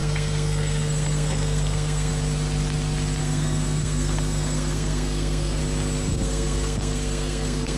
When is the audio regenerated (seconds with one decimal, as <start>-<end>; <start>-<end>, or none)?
0.0-2.1; 3.2-5.6; 6.1-7.8